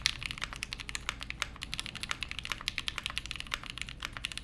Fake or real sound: real